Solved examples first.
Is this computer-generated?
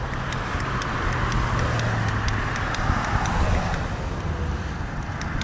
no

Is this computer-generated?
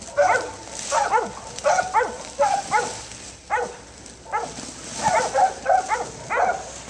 no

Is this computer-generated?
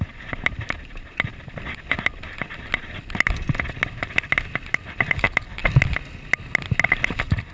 no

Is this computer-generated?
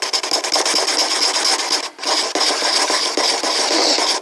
no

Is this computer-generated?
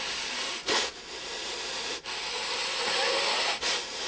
no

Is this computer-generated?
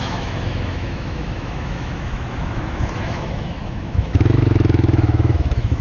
yes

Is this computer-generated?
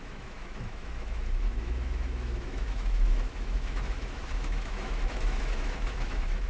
yes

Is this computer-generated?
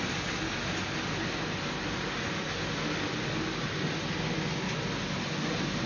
no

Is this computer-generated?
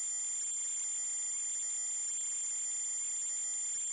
no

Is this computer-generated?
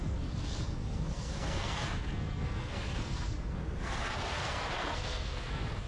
yes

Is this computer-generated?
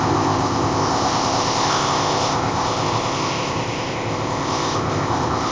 yes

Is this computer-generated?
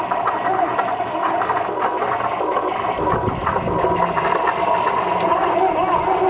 no